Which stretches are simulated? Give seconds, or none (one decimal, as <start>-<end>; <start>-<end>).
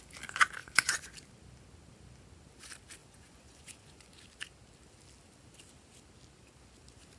0.6-1.1; 3.0-4.1